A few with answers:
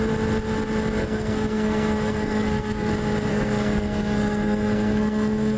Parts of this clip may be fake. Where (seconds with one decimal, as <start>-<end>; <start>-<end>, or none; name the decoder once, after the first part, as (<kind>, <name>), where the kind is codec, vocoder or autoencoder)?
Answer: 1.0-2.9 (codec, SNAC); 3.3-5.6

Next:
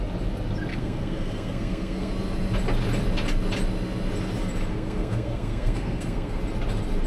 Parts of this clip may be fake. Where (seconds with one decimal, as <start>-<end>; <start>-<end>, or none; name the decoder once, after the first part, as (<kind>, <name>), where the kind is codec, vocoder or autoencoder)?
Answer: 0.7-2.1 (codec, SNAC); 4.7-6.4

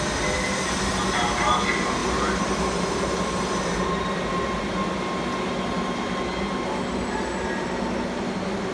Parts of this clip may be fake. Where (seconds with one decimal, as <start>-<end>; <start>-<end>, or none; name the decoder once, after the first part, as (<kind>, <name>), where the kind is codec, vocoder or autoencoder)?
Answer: none

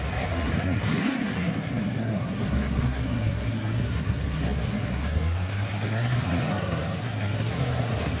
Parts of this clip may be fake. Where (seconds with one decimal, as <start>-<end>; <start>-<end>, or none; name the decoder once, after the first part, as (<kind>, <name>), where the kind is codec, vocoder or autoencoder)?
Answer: 0.0-8.2 (codec, SNAC)

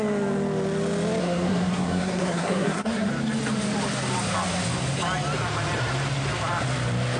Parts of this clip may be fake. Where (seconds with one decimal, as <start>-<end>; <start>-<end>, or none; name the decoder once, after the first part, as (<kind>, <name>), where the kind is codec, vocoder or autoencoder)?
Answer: 1.2-3.1 (codec, SNAC)

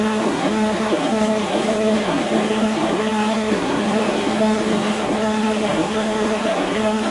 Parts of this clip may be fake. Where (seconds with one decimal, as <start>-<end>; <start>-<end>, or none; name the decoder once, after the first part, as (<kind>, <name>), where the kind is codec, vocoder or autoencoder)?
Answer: 0.0-7.1 (codec, SNAC)